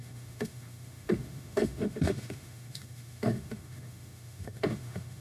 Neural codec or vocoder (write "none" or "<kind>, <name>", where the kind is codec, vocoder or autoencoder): autoencoder, DAC-VAE